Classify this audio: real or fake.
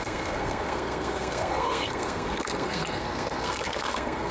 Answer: fake